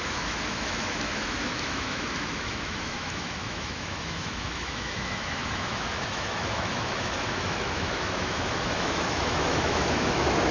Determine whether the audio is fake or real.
fake